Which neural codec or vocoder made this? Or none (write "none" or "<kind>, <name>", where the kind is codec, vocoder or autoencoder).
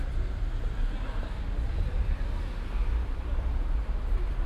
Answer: none